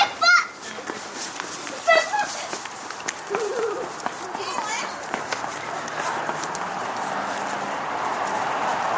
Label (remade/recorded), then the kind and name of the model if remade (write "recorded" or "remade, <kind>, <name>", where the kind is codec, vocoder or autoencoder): recorded